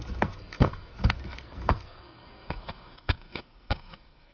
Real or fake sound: fake